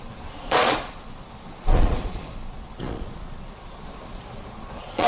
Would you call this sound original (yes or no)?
no